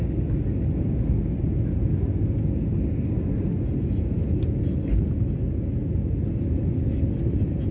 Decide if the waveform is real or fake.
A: real